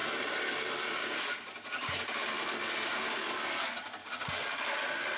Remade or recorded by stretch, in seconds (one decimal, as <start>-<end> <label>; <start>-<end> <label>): 0.0-1.0 recorded; 1.0-2.0 remade; 2.0-4.0 recorded; 4.0-4.6 remade; 4.6-5.2 recorded